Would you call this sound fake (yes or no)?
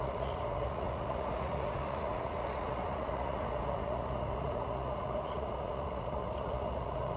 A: yes